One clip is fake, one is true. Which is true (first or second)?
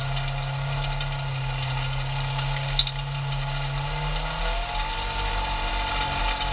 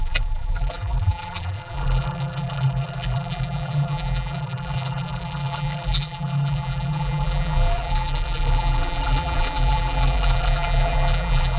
first